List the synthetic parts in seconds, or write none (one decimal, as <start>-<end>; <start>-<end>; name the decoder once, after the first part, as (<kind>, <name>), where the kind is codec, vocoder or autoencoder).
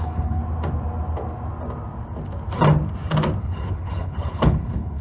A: 0.0-0.4 (codec, HILCodec); 3.4-5.0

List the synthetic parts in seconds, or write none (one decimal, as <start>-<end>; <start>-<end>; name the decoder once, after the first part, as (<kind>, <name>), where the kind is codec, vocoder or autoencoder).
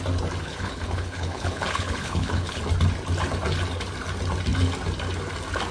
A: 0.4-2.6 (codec, HILCodec)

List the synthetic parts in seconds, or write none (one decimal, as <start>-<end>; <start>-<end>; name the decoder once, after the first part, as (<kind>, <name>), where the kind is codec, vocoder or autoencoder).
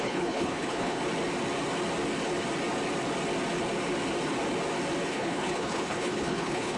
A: 0.0-1.0 (codec, HILCodec); 5.1-6.8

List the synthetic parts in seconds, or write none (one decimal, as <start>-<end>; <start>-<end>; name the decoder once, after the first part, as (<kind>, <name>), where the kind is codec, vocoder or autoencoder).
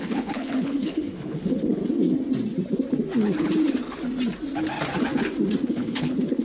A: 0.0-1.8 (codec, HILCodec); 5.6-6.4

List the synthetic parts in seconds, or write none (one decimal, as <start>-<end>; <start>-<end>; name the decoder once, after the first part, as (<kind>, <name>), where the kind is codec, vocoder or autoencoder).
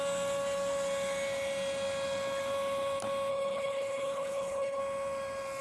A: 3.3-4.8 (codec, HILCodec)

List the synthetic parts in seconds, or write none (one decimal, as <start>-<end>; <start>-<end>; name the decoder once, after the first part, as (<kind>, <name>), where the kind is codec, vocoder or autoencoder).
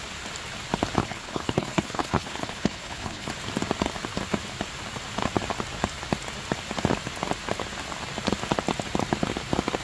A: 1.0-3.3 (codec, HILCodec)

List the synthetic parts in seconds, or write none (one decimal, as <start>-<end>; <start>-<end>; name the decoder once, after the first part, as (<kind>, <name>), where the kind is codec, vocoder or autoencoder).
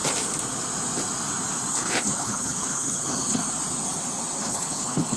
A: 1.7-3.4 (codec, HILCodec); 4.4-5.2